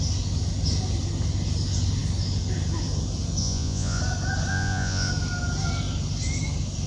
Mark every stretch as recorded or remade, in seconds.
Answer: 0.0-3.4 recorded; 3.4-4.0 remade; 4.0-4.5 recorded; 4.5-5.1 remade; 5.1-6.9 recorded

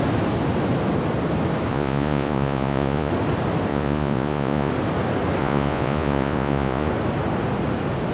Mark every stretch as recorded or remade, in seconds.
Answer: 0.0-1.7 recorded; 1.7-3.1 remade; 3.1-3.7 recorded; 3.7-4.7 remade; 4.7-5.4 recorded; 5.4-6.9 remade; 6.9-8.1 recorded

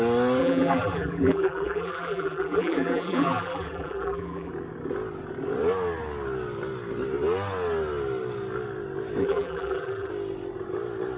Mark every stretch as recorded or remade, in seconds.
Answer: 0.0-0.4 recorded; 0.4-4.5 remade; 4.5-9.2 recorded; 9.2-10.1 remade; 10.1-11.2 recorded

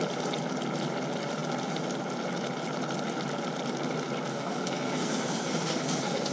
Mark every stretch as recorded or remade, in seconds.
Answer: 0.0-4.3 recorded; 4.3-6.3 remade

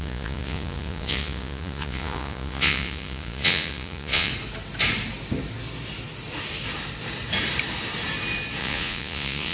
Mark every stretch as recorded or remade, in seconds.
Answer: 0.0-4.3 remade; 4.3-8.6 recorded; 8.6-9.5 remade

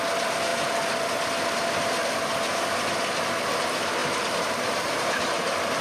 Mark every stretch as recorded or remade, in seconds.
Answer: 0.0-4.0 recorded; 4.0-5.2 remade; 5.2-5.8 recorded